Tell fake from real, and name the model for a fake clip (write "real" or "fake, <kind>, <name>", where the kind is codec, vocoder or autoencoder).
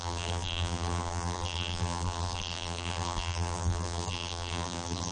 fake, vocoder, BigVGAN v2